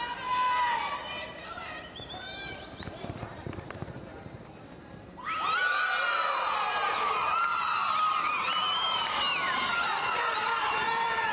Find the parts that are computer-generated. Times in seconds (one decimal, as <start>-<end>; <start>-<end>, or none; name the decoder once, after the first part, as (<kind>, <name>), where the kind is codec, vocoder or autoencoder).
0.0-11.3 (vocoder, BigVGAN v2)